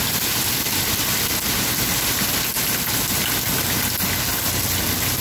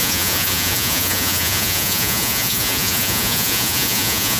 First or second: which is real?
first